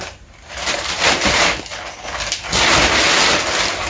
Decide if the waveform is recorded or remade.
recorded